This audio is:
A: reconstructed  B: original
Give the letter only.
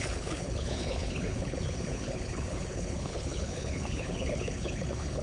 A